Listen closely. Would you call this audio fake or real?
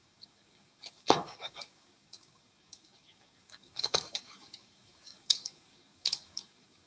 fake